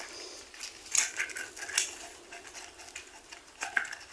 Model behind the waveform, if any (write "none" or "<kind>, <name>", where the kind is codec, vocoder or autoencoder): none